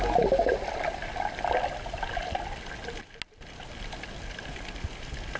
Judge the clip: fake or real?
real